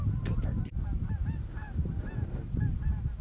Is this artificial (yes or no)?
yes